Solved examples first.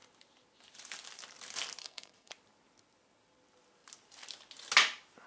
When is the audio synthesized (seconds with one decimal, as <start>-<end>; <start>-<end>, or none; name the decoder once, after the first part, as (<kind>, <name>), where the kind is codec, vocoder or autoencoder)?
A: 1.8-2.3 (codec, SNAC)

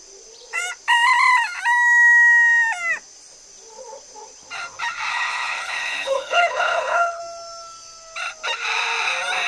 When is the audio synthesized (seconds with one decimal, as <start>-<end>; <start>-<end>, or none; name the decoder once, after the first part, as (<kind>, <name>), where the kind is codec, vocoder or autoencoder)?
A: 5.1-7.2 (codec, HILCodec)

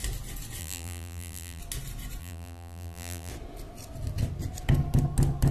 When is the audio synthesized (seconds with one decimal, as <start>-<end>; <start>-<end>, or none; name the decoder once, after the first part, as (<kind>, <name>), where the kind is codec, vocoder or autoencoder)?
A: 0.6-1.6 (vocoder, BigVGAN v2); 2.2-3.3